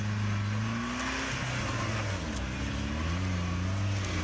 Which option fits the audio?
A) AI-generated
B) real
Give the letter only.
B